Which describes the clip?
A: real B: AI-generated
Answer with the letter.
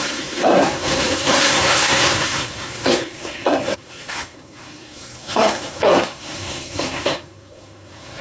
B